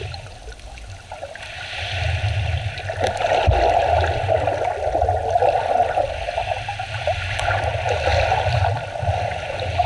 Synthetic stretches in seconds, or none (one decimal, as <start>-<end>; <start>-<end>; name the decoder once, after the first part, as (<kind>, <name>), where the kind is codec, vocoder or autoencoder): none